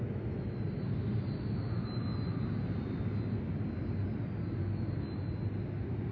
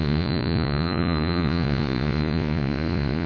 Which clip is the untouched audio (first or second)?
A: first